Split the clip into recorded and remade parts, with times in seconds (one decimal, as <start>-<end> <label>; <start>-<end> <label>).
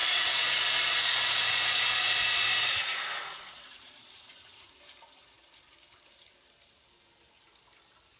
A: 0.0-4.8 remade; 4.8-8.2 recorded